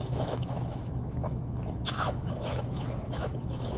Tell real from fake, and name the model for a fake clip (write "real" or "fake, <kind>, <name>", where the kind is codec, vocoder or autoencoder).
fake, autoencoder, DAC-VAE